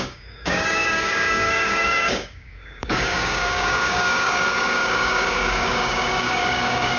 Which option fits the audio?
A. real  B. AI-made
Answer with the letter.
B